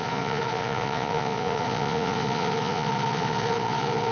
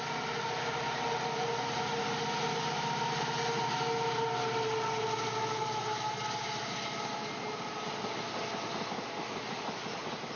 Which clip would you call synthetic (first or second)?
first